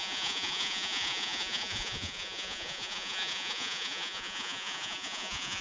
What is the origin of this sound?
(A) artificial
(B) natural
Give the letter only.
A